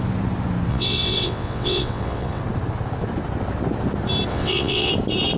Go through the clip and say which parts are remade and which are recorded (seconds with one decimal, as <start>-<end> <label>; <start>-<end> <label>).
0.0-0.7 recorded; 0.7-2.4 remade; 2.4-4.3 recorded; 4.3-4.9 remade; 4.9-5.4 recorded